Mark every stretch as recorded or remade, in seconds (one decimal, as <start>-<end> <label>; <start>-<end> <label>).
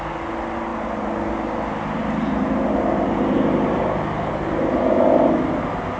0.0-6.0 recorded